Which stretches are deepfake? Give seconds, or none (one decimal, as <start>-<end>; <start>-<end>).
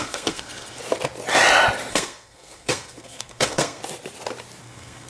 0.0-0.8; 1.9-3.8; 4.6-5.1